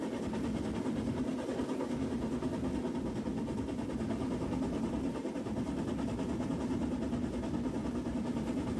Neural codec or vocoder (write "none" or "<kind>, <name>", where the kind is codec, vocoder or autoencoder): none